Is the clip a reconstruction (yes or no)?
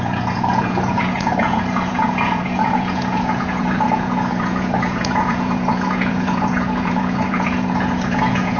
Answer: yes